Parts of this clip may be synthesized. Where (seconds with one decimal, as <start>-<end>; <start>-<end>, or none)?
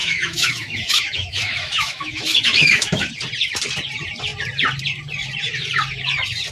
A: 0.0-3.1